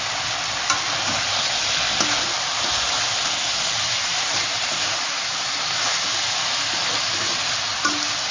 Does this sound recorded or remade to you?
recorded